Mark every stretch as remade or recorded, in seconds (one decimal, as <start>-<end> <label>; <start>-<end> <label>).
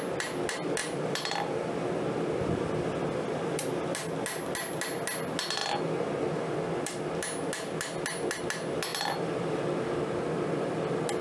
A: 0.0-11.2 recorded